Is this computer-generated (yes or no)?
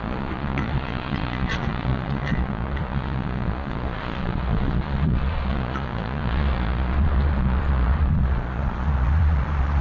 yes